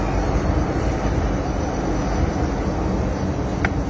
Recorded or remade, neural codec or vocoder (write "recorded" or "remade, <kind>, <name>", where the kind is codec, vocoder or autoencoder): recorded